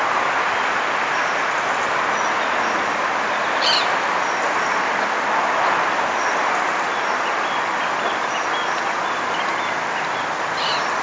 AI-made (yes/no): no